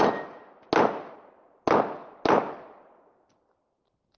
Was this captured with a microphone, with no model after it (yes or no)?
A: yes